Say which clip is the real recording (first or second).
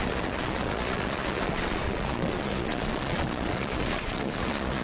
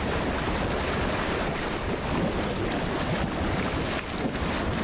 second